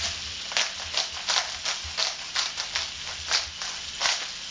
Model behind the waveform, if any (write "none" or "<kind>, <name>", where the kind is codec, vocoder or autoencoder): none